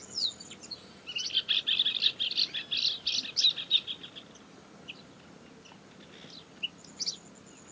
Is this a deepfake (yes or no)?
no